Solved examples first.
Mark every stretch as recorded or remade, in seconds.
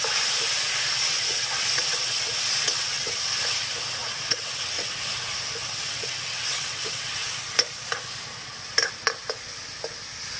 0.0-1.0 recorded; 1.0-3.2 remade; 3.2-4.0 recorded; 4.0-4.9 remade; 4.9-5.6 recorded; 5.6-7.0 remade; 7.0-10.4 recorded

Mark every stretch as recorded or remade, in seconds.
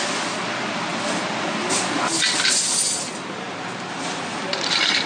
0.0-5.1 recorded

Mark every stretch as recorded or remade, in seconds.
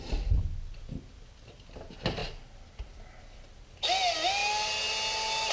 0.0-5.5 recorded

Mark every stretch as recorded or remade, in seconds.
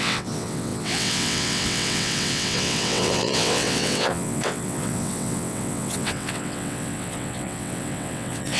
0.0-8.6 remade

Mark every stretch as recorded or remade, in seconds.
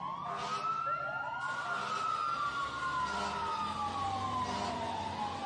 0.0-5.5 recorded